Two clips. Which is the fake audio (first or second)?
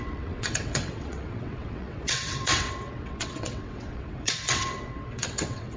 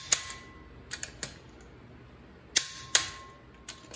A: first